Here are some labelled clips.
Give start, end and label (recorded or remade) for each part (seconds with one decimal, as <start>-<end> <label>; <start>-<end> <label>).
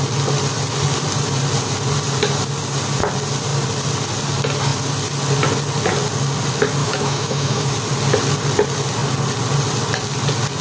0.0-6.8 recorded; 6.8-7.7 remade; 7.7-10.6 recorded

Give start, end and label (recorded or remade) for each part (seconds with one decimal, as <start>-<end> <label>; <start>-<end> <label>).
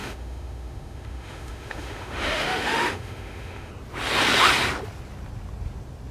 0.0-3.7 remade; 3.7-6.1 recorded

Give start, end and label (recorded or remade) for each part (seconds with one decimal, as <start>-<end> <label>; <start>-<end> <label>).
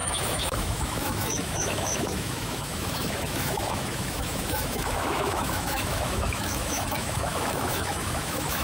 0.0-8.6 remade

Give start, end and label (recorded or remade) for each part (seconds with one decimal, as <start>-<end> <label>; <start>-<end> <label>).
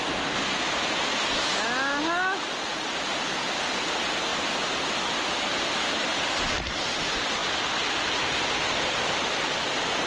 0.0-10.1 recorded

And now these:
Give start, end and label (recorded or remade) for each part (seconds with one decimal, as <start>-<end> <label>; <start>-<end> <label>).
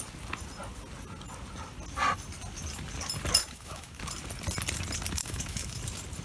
0.0-3.4 recorded; 3.4-4.0 remade; 4.0-5.2 recorded; 5.2-5.8 remade; 5.8-6.2 recorded